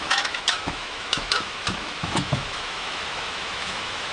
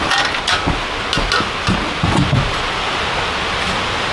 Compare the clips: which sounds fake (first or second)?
first